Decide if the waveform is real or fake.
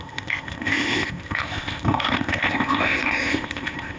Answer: fake